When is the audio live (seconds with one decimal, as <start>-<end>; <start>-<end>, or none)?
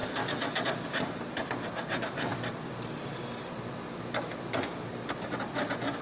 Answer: 0.0-0.9; 1.4-1.9; 2.3-6.0